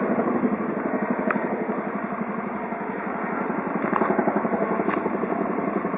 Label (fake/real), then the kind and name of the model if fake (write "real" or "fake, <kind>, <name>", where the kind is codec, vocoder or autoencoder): real